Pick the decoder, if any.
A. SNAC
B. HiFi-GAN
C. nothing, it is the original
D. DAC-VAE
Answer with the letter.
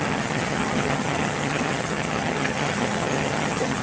B